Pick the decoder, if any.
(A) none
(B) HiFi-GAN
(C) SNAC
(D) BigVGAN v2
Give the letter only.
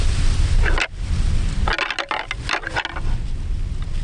A